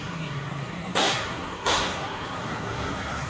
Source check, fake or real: fake